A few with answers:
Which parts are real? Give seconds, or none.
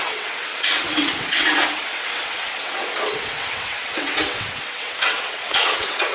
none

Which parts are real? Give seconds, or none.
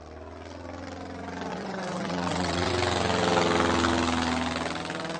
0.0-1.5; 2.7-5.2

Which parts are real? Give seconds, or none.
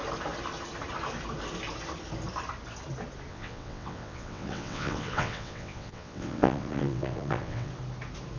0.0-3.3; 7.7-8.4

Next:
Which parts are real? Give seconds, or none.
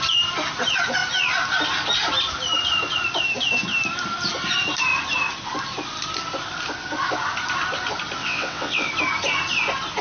0.0-8.2; 8.9-10.0